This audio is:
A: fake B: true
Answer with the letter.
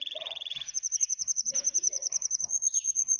A